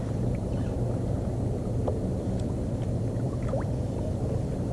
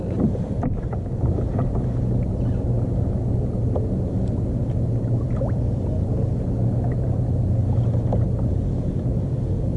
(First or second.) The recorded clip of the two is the second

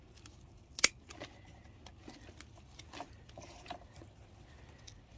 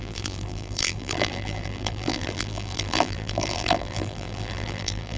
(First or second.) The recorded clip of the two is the first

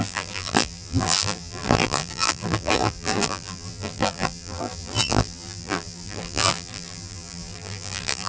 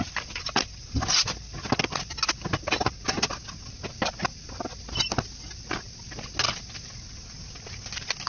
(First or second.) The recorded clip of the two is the second